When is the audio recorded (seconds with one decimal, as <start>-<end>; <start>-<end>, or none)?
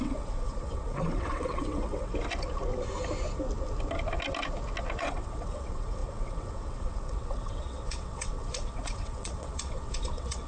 2.1-5.0